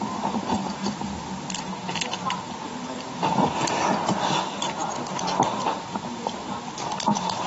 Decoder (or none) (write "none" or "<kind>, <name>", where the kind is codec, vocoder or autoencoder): none